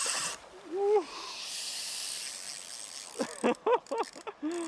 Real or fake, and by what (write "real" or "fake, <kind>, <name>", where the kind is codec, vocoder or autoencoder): real